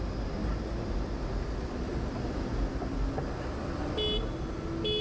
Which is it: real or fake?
real